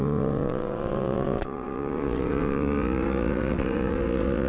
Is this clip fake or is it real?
fake